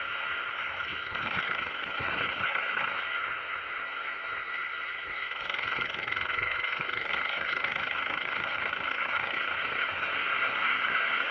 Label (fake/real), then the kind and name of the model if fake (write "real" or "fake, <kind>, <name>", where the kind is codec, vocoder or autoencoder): fake, codec, SNAC